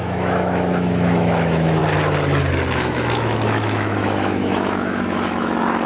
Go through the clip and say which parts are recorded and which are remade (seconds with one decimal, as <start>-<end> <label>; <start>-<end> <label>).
0.0-1.8 remade; 1.8-2.7 recorded; 2.7-5.9 remade